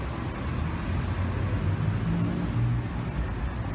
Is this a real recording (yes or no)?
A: yes